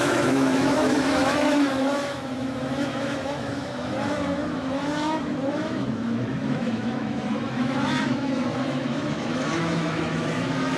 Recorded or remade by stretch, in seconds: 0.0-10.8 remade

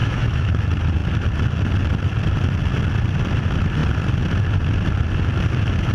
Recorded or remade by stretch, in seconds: 0.0-0.5 remade; 0.5-5.9 recorded

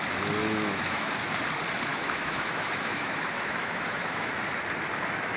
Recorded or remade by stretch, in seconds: 0.0-0.4 recorded; 0.4-1.2 remade; 1.2-1.9 recorded; 1.9-4.3 remade; 4.3-5.4 recorded

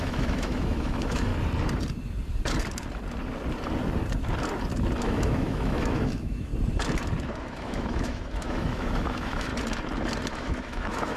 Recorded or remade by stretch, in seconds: 0.0-1.3 remade; 1.3-5.0 recorded; 5.0-6.5 remade; 6.5-7.4 recorded; 7.4-9.5 remade; 9.5-10.3 recorded; 10.3-11.2 remade